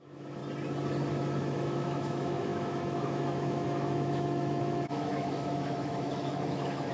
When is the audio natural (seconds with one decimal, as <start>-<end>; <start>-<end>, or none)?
0.4-1.1